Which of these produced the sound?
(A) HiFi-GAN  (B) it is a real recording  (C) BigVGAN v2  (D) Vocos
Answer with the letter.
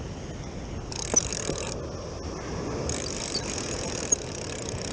B